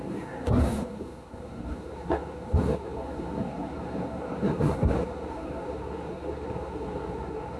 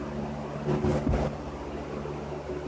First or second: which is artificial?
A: first